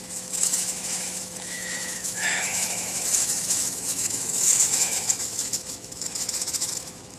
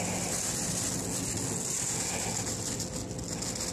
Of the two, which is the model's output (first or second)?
first